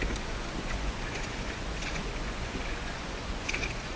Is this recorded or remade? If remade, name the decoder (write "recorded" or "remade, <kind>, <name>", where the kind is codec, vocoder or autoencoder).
remade, vocoder, Vocos